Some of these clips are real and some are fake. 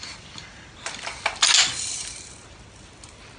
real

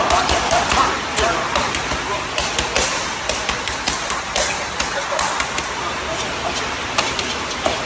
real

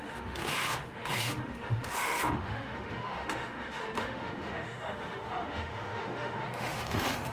fake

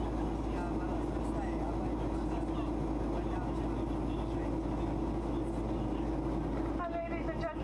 real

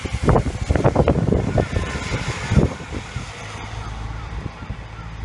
fake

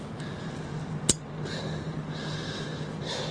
real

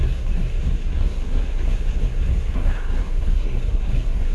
fake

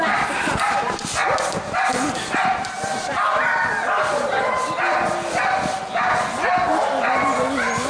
real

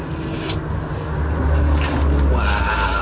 real